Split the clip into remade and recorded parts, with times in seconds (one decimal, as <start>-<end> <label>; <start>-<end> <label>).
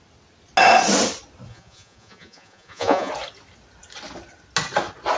0.0-1.5 recorded; 1.5-3.1 remade; 3.1-5.2 recorded